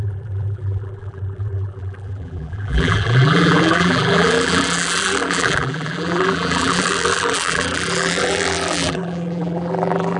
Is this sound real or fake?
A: fake